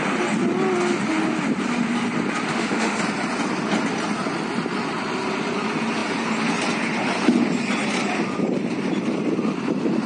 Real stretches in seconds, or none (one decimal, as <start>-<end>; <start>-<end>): 0.0-2.5; 3.0-10.1